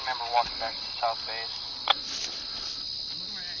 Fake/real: real